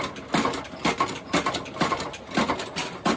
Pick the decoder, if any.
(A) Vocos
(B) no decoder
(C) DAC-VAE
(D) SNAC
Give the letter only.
B